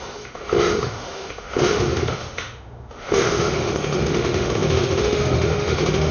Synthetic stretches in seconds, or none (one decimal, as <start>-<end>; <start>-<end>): 0.0-6.1